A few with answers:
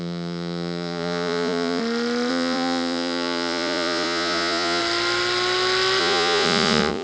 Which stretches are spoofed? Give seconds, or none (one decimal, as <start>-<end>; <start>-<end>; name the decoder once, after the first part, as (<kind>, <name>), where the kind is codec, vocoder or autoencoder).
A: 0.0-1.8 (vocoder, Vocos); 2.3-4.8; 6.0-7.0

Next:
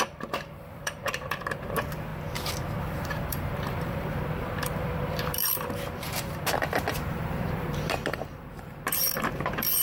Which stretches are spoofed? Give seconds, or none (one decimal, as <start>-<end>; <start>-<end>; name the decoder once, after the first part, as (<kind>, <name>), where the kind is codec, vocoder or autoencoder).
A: 0.0-2.1 (vocoder, BigVGAN v2); 2.8-9.8

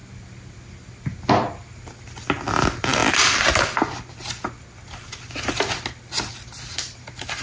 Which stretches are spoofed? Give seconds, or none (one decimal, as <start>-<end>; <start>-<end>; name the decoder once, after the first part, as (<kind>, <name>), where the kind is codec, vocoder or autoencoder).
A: none

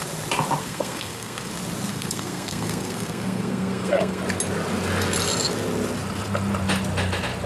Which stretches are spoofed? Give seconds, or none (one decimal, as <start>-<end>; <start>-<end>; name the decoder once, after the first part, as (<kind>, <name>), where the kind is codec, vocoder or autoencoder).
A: 0.6-1.5 (codec, SNAC); 1.9-4.2